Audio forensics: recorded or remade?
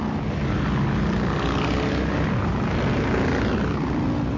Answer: recorded